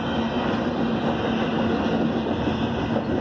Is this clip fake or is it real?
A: real